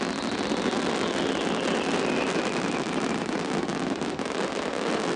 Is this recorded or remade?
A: recorded